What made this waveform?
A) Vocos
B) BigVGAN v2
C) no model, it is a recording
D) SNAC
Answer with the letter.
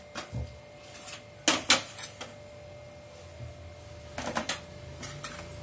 C